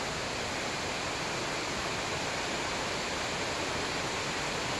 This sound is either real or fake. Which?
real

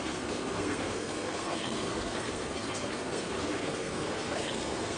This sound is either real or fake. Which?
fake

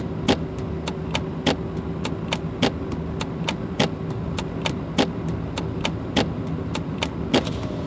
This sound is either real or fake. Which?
real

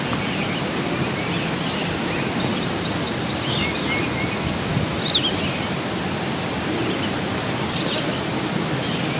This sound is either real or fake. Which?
real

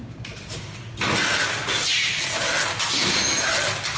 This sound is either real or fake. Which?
real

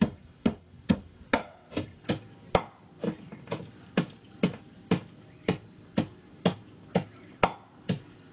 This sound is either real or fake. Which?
real